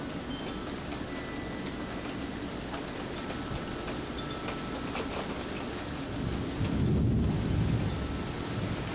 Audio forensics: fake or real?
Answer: real